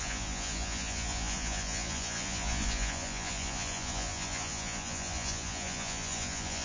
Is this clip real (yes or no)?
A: no